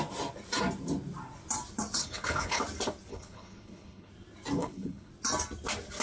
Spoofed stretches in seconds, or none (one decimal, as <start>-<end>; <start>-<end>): 2.0-2.6; 3.1-4.1; 4.6-5.1